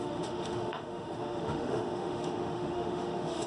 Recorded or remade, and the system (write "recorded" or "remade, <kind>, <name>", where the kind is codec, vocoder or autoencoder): remade, autoencoder, DAC-VAE